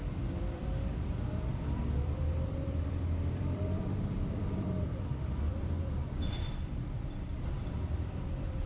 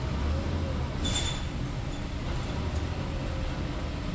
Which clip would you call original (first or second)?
second